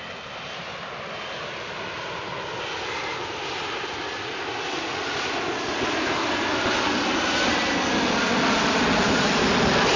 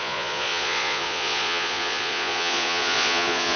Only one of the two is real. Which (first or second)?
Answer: first